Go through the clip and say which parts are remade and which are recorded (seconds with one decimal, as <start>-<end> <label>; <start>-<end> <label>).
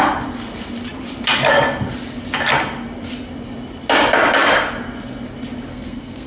0.0-5.7 recorded; 5.7-6.3 remade